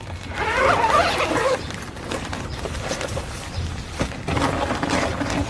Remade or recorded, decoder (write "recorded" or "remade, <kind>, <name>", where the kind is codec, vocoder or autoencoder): recorded